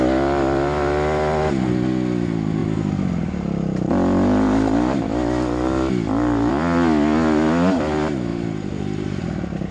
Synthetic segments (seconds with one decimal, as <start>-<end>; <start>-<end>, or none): none

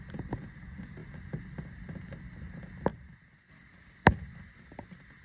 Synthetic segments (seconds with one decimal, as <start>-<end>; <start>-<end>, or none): 2.9-3.5

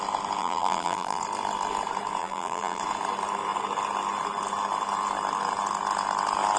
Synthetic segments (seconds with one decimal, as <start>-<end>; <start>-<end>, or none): 0.4-1.2; 2.2-2.8

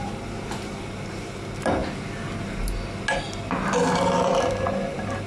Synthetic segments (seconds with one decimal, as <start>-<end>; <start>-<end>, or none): 0.0-1.8; 3.8-5.3

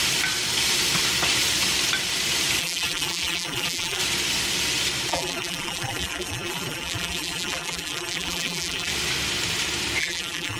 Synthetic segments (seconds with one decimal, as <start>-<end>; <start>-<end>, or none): 2.6-4.0; 5.1-8.9; 10.0-10.6

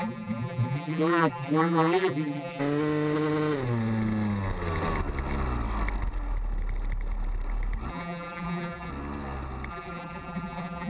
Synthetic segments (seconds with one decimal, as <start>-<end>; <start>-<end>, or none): 0.0-2.6; 7.9-8.9; 9.7-10.9

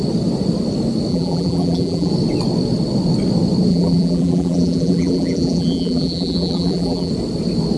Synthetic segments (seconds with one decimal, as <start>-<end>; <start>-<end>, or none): 1.1-2.1; 3.7-7.1

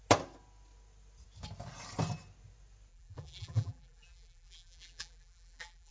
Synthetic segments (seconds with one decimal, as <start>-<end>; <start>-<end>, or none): 2.9-5.9